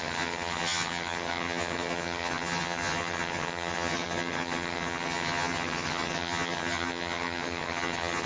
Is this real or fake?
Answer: fake